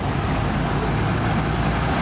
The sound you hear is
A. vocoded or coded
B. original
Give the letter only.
B